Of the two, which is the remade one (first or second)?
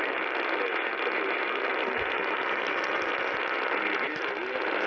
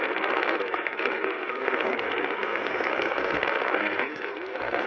second